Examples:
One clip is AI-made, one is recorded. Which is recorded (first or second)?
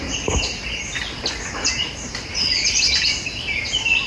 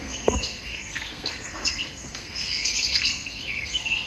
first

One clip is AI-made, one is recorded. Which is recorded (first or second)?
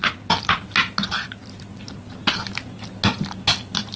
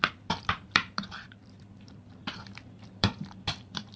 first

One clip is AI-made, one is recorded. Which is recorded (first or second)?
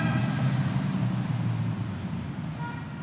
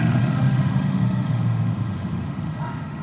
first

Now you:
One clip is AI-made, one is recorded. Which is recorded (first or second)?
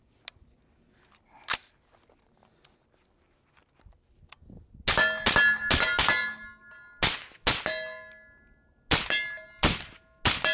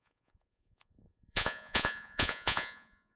first